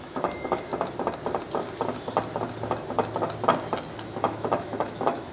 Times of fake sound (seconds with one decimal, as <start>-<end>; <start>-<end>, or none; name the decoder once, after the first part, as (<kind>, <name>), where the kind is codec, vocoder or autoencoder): 0.0-0.7 (autoencoder, DAC-VAE); 3.9-5.3